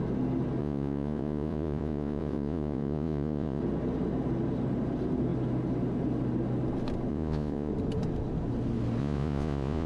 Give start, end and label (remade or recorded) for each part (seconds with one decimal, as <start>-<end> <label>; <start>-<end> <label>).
0.0-0.6 recorded; 0.6-3.6 remade; 3.6-7.1 recorded; 7.1-7.7 remade; 7.7-9.0 recorded; 9.0-9.9 remade